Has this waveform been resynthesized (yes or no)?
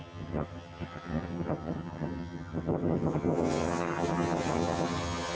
yes